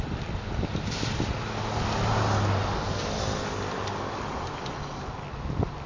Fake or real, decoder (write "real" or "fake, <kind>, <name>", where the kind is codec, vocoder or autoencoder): real